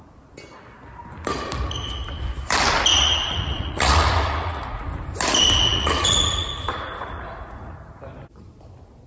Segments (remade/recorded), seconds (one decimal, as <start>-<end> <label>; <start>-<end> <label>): 0.0-2.9 recorded; 2.9-4.9 remade; 4.9-5.7 recorded; 5.7-7.7 remade; 7.7-9.1 recorded